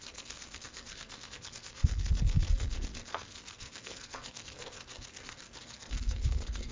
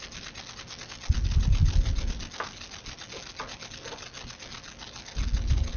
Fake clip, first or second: first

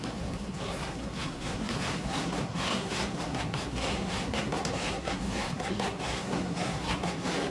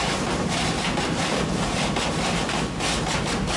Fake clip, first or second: first